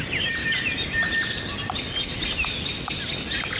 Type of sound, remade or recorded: recorded